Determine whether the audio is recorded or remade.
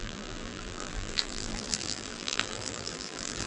remade